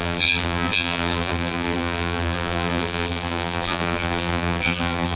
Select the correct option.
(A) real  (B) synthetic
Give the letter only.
B